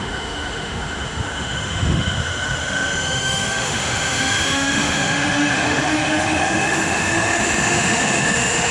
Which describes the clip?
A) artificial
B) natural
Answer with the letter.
A